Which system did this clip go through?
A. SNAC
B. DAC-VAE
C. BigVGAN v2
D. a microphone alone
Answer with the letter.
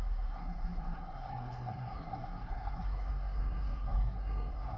A